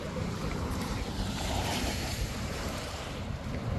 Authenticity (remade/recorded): remade